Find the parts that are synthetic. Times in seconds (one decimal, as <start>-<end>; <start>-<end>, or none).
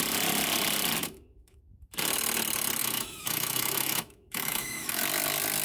1.0-1.6; 2.8-5.0